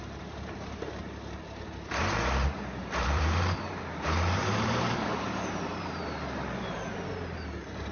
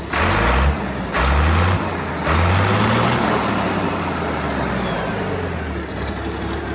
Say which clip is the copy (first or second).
first